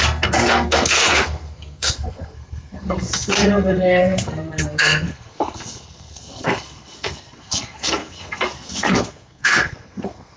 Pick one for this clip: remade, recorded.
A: remade